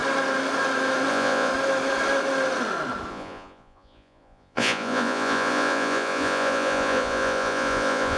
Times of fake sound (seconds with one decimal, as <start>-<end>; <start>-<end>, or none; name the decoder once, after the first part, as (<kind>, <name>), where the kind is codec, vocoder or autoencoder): 1.1-1.5 (vocoder, Vocos); 3.1-8.2